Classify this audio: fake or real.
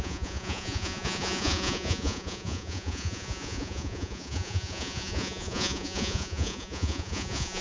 fake